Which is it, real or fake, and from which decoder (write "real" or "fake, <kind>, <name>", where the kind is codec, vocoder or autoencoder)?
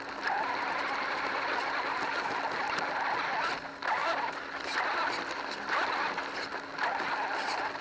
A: real